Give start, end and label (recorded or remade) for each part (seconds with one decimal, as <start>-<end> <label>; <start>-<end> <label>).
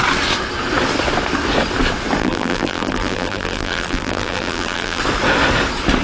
0.0-2.2 recorded; 2.2-5.0 remade; 5.0-6.0 recorded